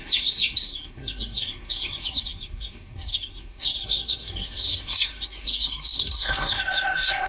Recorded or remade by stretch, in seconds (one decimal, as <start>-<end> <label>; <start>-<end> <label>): 0.0-7.3 remade